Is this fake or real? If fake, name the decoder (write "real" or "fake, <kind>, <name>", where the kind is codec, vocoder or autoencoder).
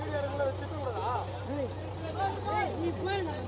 real